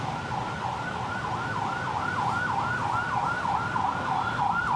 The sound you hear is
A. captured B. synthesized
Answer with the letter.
A